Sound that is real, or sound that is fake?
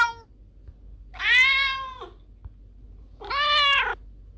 real